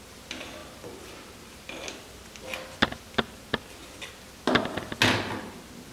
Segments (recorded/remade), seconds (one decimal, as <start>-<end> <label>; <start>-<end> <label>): 0.0-5.9 recorded